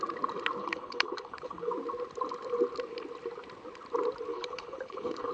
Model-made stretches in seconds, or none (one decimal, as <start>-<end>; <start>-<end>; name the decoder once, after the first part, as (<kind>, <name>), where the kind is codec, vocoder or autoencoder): 0.6-1.7 (codec, HILCodec); 4.3-5.3